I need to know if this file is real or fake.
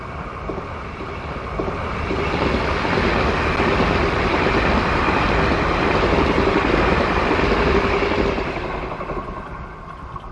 real